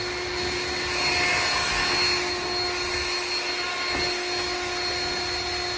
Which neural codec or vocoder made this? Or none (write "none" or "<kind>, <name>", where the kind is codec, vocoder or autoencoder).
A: none